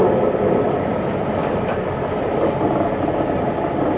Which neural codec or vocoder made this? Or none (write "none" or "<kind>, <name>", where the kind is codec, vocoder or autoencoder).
vocoder, BigVGAN v2